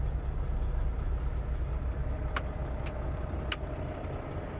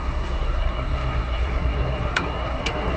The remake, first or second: second